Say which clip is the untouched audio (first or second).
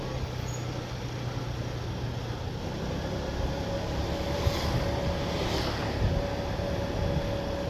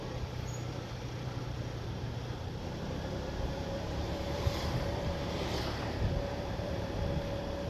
first